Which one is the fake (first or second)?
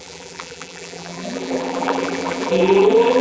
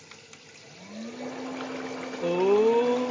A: first